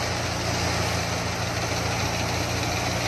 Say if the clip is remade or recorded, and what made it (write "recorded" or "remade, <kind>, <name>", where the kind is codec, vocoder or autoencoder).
recorded